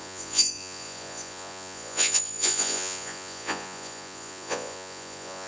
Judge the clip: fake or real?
fake